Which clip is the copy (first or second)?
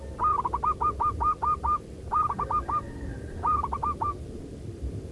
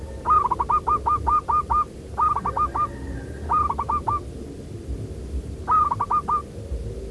first